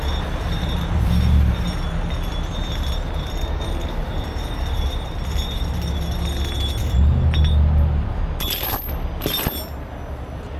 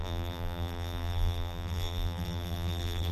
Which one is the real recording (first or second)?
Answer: first